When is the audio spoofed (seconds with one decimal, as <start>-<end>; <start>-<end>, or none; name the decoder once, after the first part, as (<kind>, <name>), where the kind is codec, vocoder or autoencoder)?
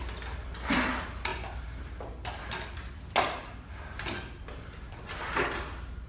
none